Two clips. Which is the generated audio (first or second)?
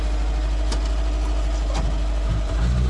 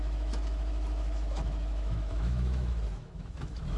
second